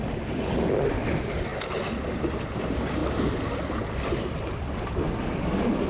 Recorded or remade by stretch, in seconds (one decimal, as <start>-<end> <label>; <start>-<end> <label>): 0.0-5.9 recorded